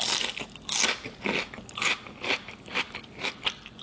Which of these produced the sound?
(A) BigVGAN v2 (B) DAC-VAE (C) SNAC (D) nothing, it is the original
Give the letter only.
D